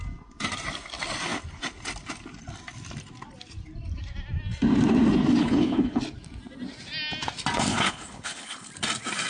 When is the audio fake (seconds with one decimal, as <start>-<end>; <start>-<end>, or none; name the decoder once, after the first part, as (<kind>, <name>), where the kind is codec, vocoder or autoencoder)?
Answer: 5.4-6.0 (codec, HILCodec); 7.7-8.7